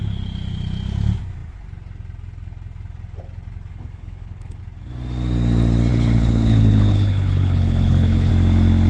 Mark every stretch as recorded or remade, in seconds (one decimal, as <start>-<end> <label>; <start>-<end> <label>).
0.0-3.7 recorded; 3.7-4.6 remade; 4.6-5.9 recorded; 5.9-8.3 remade; 8.3-8.9 recorded